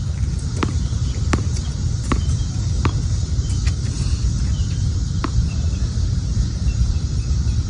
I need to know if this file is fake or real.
fake